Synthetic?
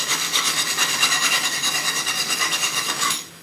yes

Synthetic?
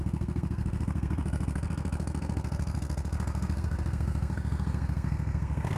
yes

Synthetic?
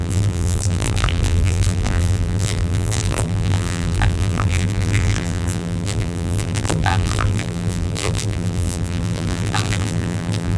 yes